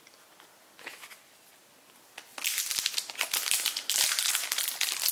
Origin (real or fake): real